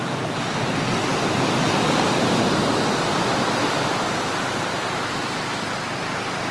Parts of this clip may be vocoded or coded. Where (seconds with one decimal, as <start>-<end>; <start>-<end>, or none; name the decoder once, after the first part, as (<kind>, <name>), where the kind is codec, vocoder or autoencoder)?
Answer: none